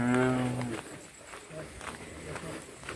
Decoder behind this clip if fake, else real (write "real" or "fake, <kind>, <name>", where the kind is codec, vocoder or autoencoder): real